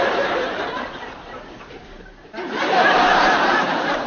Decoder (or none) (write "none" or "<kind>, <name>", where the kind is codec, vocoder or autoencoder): vocoder, BigVGAN v2